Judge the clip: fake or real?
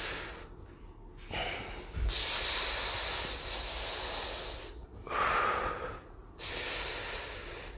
real